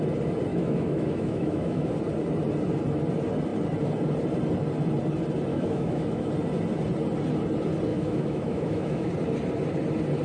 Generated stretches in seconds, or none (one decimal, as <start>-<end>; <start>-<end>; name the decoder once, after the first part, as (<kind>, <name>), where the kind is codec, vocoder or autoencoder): 0.5-1.9 (autoencoder, DAC-VAE); 5.5-6.3; 7.9-9.1